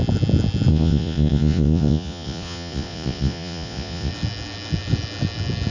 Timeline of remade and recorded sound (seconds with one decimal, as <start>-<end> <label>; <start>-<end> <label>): 0.0-0.7 recorded; 0.7-4.1 remade; 4.1-5.7 recorded